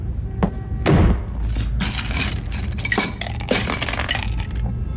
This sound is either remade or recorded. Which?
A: recorded